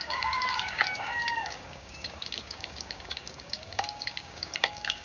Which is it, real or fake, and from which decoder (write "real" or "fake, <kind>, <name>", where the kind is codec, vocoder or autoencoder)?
fake, codec, DAC